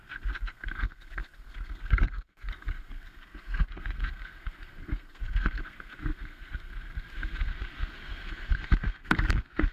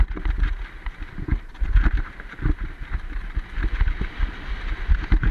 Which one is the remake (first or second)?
first